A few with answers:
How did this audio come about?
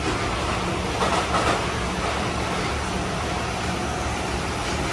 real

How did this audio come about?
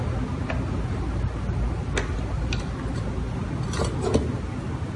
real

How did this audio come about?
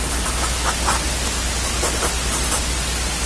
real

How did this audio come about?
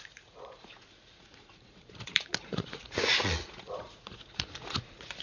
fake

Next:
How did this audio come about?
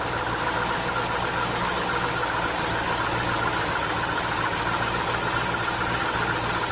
real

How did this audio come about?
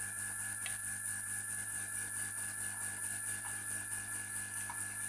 real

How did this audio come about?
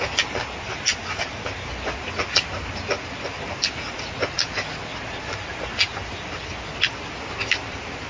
real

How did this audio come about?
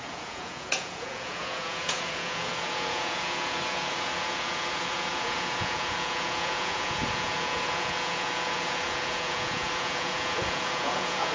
fake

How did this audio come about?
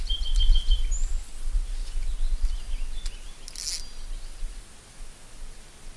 real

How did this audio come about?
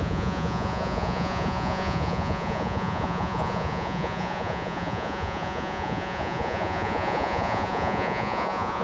fake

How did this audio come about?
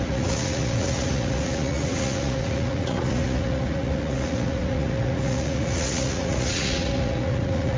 fake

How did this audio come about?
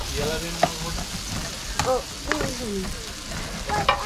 real